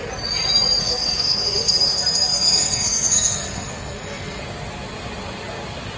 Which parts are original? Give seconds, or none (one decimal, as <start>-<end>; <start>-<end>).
0.0-0.8; 4.4-6.0